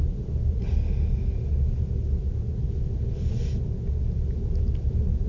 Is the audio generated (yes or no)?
no